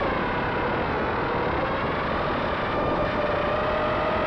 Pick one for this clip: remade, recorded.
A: recorded